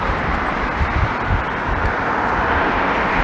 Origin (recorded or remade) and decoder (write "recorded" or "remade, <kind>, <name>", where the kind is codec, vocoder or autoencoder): recorded